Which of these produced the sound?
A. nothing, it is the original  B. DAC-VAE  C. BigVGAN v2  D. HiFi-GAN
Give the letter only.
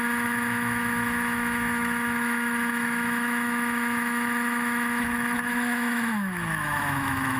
B